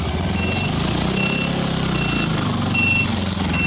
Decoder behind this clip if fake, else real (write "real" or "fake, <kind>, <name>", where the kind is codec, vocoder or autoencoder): real